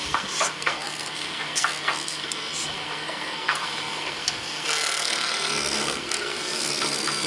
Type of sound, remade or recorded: remade